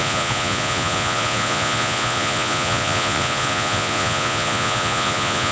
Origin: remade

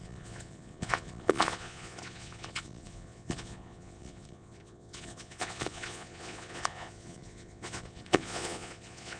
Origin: remade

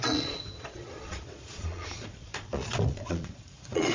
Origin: remade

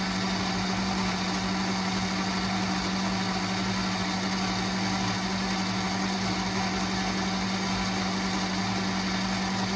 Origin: recorded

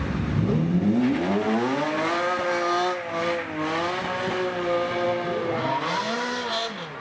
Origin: recorded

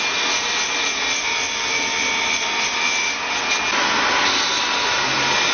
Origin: recorded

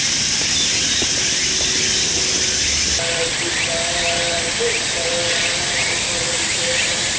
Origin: recorded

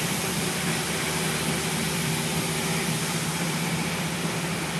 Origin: recorded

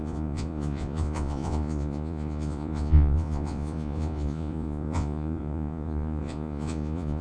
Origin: remade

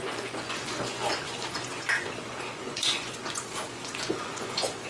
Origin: remade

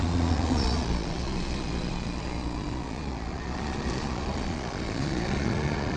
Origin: remade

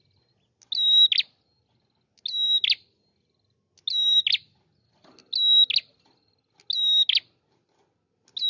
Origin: recorded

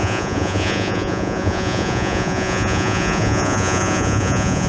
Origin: remade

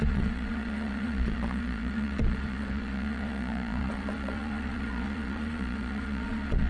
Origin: remade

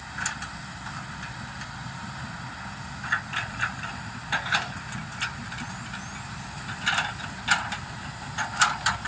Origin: recorded